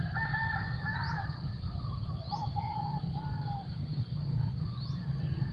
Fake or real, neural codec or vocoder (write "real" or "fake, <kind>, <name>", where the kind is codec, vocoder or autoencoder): fake, vocoder, BigVGAN v2